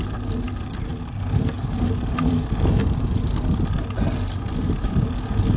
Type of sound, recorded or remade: recorded